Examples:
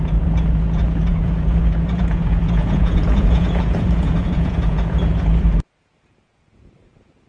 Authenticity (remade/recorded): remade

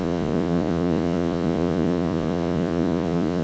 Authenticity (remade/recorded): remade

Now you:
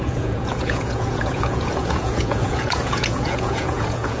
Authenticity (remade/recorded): remade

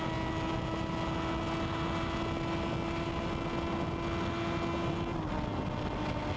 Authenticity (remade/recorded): recorded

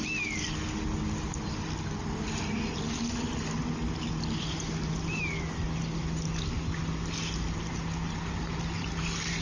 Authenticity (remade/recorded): recorded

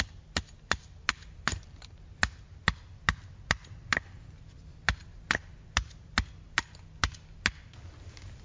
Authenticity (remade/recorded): recorded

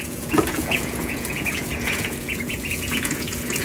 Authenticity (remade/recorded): remade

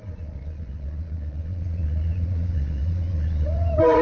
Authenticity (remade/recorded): remade